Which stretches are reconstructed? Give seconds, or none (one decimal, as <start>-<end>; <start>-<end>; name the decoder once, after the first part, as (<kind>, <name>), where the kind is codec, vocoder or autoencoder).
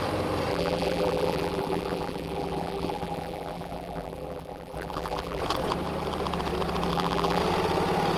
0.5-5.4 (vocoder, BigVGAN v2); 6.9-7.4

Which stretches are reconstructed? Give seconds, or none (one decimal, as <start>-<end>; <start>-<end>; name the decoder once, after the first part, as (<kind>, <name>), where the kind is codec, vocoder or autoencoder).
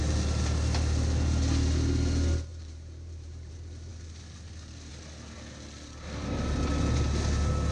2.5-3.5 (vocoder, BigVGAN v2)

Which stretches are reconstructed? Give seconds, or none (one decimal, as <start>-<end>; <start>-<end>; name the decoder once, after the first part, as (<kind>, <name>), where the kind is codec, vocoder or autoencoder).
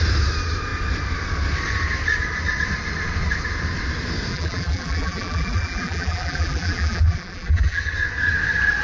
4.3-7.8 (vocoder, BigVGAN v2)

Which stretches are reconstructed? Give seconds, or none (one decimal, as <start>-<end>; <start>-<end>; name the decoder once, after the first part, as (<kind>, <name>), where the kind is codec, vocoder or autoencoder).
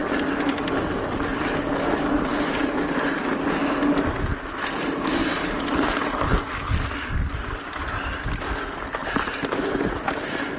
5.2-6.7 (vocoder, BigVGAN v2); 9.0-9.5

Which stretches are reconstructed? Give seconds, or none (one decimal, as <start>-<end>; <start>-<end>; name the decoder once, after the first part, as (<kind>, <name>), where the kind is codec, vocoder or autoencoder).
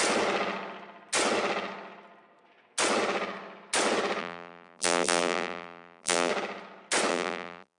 4.2-6.3 (vocoder, BigVGAN v2); 7.1-7.8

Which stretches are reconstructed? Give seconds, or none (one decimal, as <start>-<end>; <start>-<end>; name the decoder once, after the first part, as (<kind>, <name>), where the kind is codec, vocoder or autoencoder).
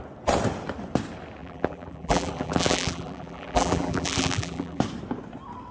1.4-4.8 (vocoder, BigVGAN v2)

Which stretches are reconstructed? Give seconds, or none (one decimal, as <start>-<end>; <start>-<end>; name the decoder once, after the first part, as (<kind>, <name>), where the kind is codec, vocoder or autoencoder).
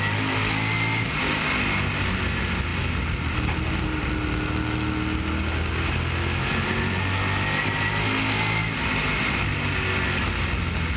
none